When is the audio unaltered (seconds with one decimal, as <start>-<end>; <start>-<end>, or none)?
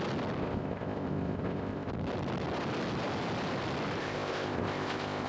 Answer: 0.0-0.4; 1.9-4.0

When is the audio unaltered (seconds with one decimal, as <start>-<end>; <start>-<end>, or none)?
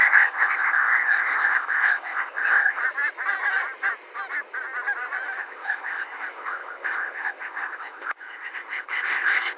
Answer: 2.8-5.4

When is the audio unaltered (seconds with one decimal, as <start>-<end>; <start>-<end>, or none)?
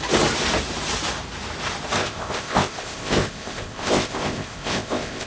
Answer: 0.0-2.0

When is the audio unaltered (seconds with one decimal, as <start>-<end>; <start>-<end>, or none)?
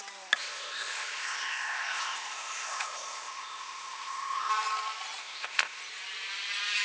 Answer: 0.0-0.4; 4.5-5.2; 5.8-6.8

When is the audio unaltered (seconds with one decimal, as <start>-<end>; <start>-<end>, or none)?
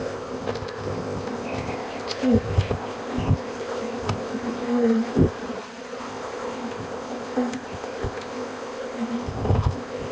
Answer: 5.4-6.0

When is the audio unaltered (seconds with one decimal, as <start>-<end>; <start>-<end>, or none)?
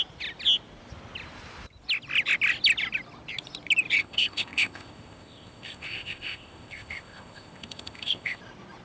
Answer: 0.0-4.0; 8.4-8.8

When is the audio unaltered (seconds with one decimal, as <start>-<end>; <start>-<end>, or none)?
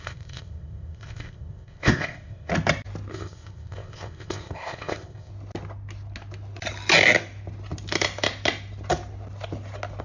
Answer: 2.5-3.1; 5.3-10.0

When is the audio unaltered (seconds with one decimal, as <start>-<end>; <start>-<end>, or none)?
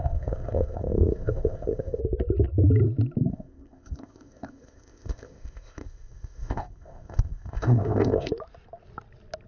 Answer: 2.0-3.3; 8.3-9.5